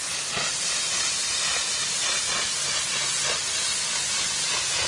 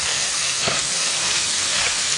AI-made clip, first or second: second